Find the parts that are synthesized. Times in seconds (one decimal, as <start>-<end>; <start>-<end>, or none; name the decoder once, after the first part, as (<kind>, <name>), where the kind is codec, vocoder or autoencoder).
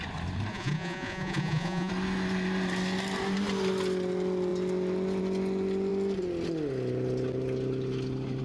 0.5-1.9 (vocoder, Vocos)